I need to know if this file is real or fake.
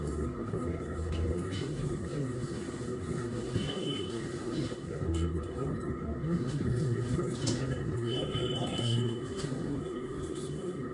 fake